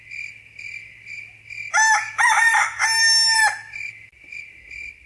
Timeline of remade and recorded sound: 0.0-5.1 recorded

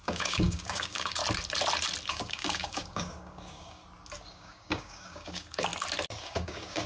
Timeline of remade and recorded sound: 0.0-1.2 remade; 1.2-2.1 recorded; 2.1-3.8 remade; 3.8-4.3 recorded; 4.3-5.7 remade; 5.7-6.2 recorded; 6.2-6.9 remade

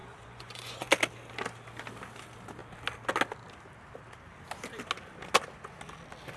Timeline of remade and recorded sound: 0.0-0.9 remade; 0.9-6.4 recorded

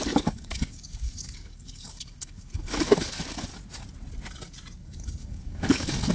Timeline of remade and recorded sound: 0.0-3.5 remade; 3.5-4.8 recorded; 4.8-6.1 remade

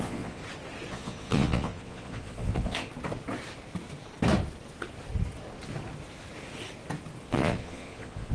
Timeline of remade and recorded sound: 0.0-0.4 remade; 0.4-0.9 recorded; 0.9-2.9 remade; 2.9-7.2 recorded; 7.2-8.3 remade

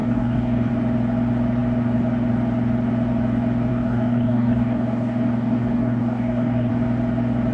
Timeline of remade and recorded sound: 0.0-0.7 remade; 0.7-3.7 recorded; 3.7-6.7 remade; 6.7-7.5 recorded

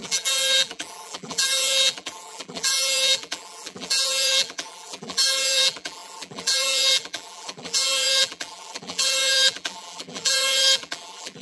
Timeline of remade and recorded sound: 0.0-11.4 remade

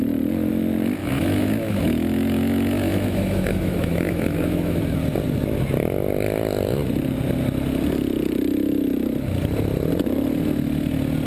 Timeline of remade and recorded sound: 0.0-1.0 recorded; 1.0-4.8 remade; 4.8-11.3 recorded